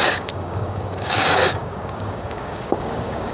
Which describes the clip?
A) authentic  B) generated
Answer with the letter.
B